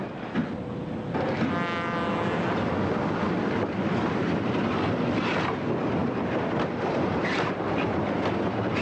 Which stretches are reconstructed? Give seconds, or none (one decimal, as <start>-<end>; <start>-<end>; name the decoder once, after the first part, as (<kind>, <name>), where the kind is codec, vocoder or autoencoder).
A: 6.0-7.5 (vocoder, BigVGAN v2)